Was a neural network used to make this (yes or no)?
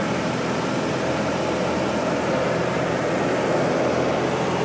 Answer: no